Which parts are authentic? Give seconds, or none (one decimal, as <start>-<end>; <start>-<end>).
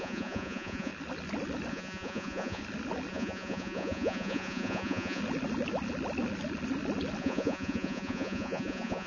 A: 0.9-1.7; 2.6-3.1; 5.2-7.2